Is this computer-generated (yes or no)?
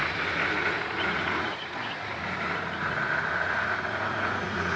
yes